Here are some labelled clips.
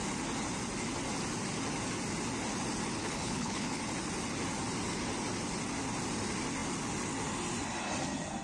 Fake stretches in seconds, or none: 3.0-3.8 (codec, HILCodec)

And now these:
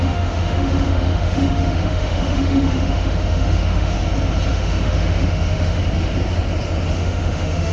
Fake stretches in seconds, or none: 0.0-4.0 (autoencoder, DAC-VAE); 4.5-5.8; 6.9-7.7

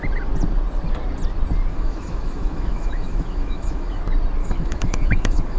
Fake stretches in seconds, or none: 1.7-4.0 (autoencoder, DAC-VAE); 4.4-5.6

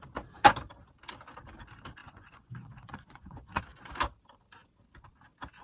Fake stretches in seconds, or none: 2.0-3.6 (vocoder, Vocos)